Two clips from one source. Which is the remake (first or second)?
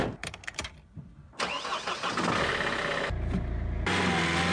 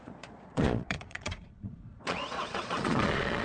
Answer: second